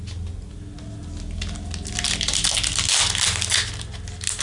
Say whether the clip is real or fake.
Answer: real